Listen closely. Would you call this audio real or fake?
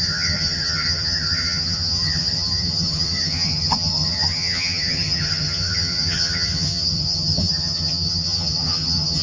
fake